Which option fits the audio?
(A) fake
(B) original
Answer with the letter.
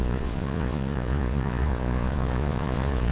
A